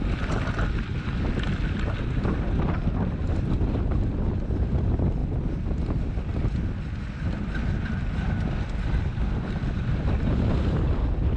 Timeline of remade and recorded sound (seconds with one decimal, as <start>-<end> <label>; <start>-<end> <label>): 0.0-11.4 recorded